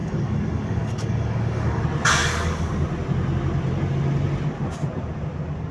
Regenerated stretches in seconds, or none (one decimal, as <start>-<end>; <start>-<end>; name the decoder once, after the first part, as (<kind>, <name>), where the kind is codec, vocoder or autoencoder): 0.0-1.8 (codec, DAC); 2.2-2.7